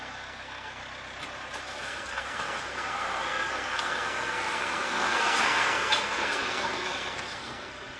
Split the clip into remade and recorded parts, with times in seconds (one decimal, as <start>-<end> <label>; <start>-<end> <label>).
0.0-0.8 remade; 0.8-1.6 recorded; 1.6-8.0 remade